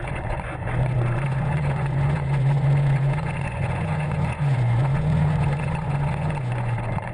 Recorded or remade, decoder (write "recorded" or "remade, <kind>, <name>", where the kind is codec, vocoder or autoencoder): remade, vocoder, Vocos